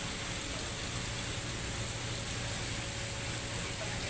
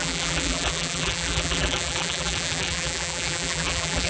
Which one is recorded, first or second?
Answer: first